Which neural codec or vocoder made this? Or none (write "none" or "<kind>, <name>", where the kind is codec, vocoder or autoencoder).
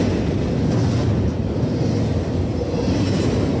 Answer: none